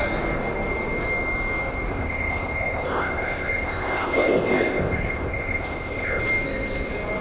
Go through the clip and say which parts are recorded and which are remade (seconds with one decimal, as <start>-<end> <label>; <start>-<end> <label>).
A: 0.0-1.9 recorded; 1.9-6.2 remade; 6.2-7.2 recorded